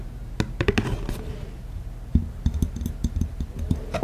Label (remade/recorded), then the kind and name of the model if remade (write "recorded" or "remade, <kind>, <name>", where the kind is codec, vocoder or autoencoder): recorded